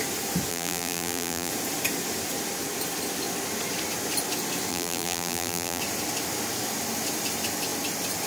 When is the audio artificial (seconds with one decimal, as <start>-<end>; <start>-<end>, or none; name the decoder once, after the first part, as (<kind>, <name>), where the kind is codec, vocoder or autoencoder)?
0.5-1.5 (vocoder, BigVGAN v2); 4.7-5.8